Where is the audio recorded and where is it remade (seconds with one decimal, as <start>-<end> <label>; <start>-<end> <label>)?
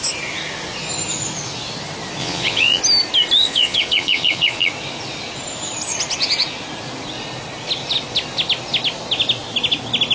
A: 0.0-2.2 recorded; 2.2-2.8 remade; 2.8-3.4 recorded; 3.4-4.7 remade; 4.7-10.1 recorded